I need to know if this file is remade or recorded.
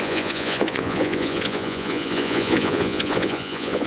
remade